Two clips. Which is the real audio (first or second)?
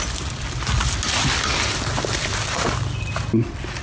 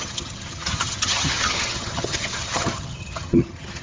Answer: first